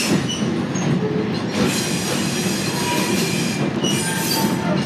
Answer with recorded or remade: recorded